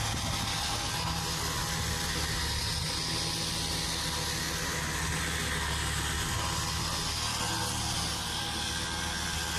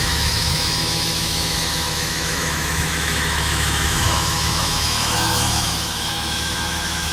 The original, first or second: first